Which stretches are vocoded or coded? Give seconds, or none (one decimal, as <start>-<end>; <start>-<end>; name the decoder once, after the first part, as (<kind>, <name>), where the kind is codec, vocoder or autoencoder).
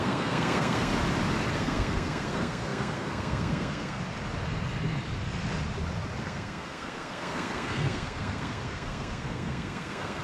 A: 0.0-0.9 (codec, SNAC); 1.5-4.0; 6.2-10.2